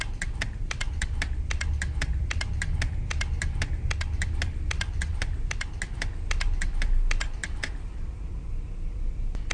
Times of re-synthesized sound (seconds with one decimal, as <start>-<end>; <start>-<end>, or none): none